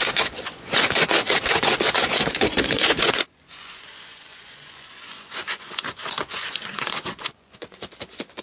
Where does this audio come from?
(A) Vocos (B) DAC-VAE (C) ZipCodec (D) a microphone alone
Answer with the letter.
A